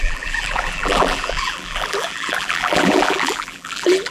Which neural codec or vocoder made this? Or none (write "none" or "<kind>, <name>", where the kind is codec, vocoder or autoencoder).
vocoder, BigVGAN v2